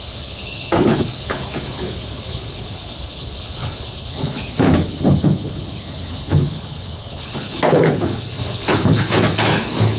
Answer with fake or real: fake